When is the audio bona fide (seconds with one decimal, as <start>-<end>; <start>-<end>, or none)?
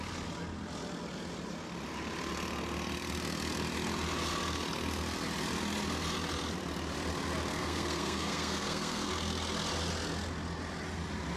0.0-7.5; 9.1-11.4